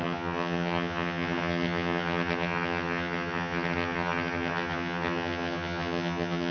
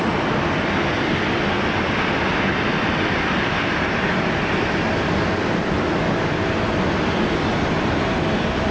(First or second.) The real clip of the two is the second